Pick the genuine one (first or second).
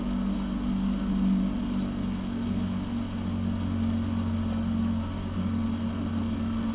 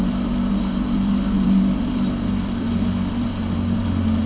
first